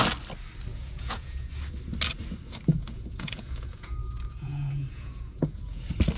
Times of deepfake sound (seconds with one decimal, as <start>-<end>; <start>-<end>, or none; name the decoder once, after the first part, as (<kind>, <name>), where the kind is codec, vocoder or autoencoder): 0.7-1.5 (vocoder, Vocos); 2.7-5.8